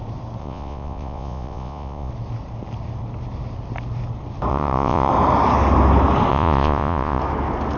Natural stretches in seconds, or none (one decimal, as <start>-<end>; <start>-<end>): 0.0-0.4; 2.1-4.5; 5.1-6.3; 7.2-7.8

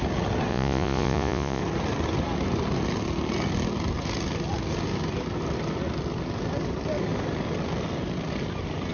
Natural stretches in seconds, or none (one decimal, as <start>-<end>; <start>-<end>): 0.0-0.5; 1.6-8.9

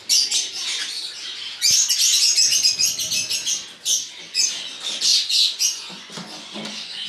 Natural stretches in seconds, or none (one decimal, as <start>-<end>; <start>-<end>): 0.0-2.1; 2.9-5.1

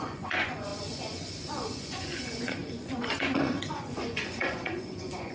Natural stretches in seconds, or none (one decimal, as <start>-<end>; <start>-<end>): none